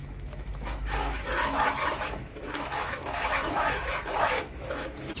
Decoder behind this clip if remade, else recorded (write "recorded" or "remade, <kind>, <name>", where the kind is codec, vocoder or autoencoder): remade, autoencoder, DAC-VAE